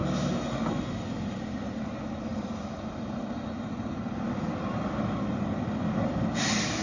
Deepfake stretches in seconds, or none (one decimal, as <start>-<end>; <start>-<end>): none